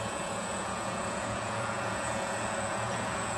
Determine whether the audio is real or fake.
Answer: fake